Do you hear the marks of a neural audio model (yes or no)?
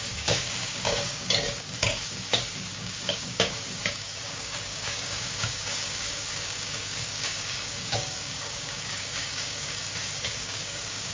yes